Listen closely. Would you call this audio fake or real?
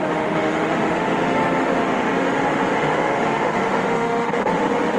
fake